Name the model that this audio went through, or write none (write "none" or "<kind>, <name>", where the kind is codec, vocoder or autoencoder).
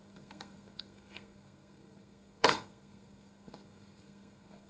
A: codec, SNAC